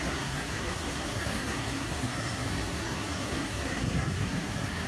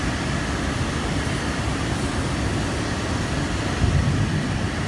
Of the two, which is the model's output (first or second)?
first